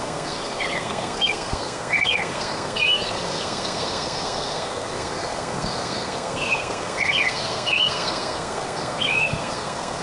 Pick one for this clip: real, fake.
fake